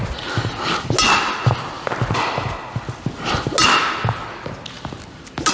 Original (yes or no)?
yes